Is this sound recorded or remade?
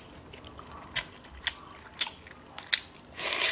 recorded